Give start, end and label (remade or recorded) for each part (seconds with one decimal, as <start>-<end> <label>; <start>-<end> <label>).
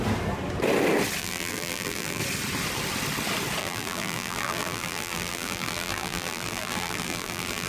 0.0-1.2 recorded; 1.2-2.2 remade; 2.2-3.6 recorded; 3.6-7.7 remade